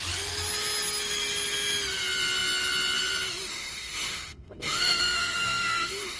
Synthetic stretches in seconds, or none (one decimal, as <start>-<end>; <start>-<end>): 3.5-6.2